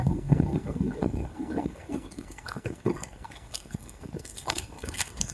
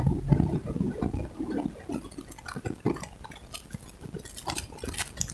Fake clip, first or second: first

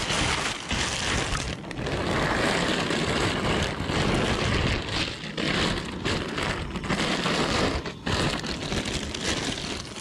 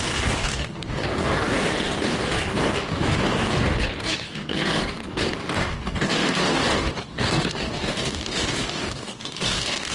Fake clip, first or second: second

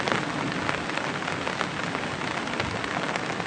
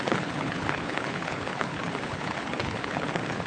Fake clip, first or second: second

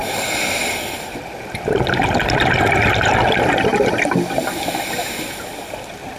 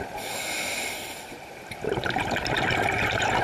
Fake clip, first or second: second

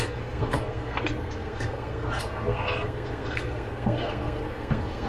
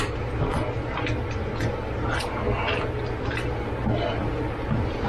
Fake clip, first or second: first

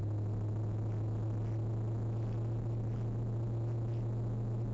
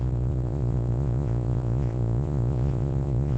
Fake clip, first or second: second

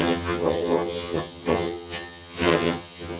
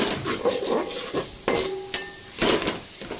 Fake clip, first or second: first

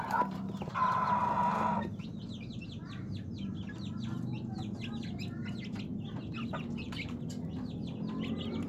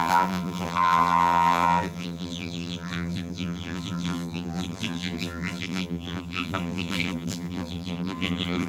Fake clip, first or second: second